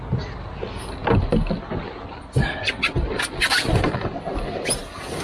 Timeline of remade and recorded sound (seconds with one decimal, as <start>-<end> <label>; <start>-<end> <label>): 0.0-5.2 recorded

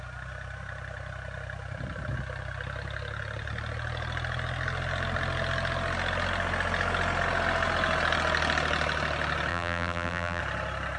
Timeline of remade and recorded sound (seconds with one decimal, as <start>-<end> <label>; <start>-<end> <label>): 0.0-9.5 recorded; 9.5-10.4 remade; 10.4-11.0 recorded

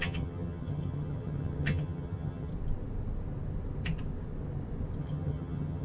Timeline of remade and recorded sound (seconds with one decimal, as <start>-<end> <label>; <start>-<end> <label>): 0.0-2.5 remade; 2.5-5.0 recorded; 5.0-5.8 remade